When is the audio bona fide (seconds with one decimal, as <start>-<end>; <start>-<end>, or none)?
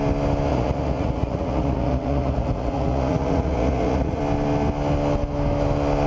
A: 0.0-0.5; 4.2-6.1